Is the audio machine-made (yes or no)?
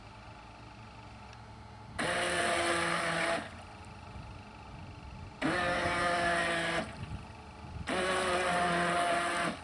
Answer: no